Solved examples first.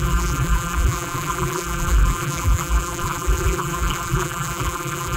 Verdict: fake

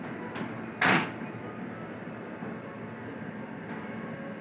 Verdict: real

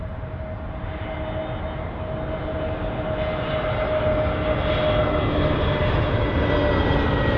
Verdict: real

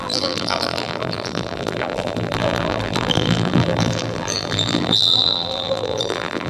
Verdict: fake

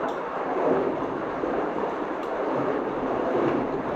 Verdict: fake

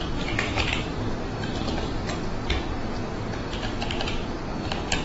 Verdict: real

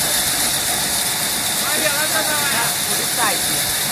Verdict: fake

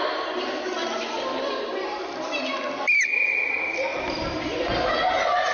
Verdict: fake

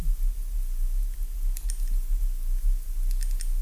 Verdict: real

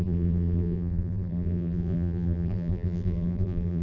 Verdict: fake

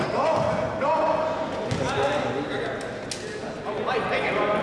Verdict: real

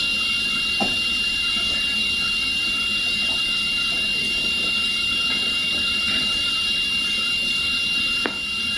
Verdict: real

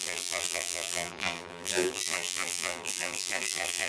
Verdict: fake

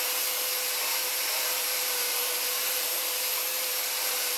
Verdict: fake